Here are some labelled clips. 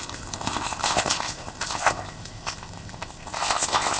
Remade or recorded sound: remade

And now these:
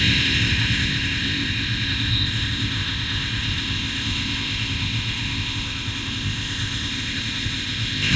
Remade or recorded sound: remade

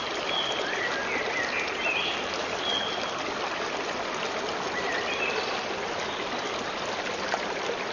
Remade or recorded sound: recorded